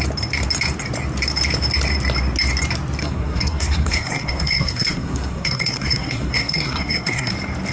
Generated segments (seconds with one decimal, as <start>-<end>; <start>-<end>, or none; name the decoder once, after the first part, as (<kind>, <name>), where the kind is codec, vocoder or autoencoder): 3.0-7.3 (codec, SNAC)